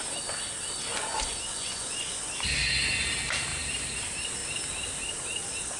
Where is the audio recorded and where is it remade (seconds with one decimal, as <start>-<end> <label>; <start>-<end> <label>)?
0.0-0.9 recorded; 0.9-2.3 remade; 2.3-5.8 recorded